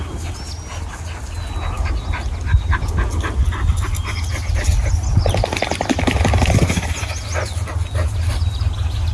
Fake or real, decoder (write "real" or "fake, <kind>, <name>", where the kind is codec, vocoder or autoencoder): real